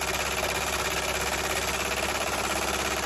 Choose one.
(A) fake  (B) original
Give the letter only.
B